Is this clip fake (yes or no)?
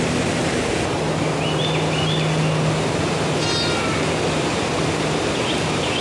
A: no